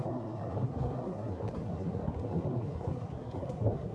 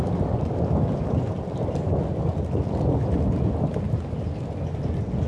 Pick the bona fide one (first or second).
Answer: second